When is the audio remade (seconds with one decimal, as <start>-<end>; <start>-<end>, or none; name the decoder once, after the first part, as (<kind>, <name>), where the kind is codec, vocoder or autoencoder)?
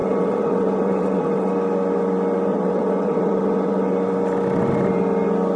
0.0-1.5 (vocoder, WaveNeXt); 2.5-3.9